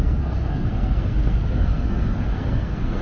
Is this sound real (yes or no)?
no